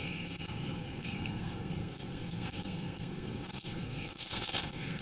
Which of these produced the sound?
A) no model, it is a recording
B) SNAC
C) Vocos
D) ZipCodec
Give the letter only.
B